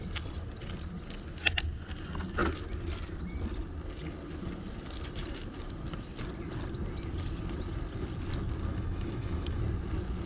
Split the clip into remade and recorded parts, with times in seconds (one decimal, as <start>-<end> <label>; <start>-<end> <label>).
0.0-8.7 recorded; 8.7-9.6 remade; 9.6-10.3 recorded